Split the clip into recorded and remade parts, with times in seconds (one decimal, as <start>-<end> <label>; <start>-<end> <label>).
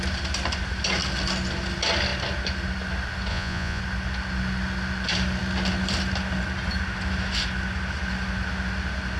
0.0-3.3 recorded; 3.3-3.8 remade; 3.8-9.2 recorded